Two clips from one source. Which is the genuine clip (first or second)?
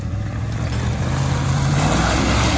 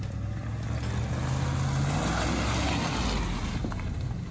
second